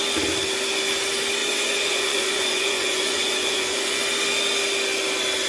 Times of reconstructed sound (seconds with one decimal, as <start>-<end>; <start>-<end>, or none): 1.4-4.0

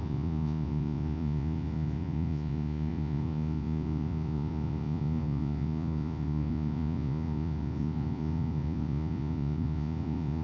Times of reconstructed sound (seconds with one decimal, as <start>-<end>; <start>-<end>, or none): 0.0-10.4

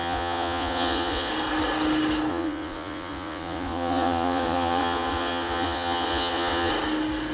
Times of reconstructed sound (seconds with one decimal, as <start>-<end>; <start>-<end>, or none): 0.0-1.3; 2.3-6.7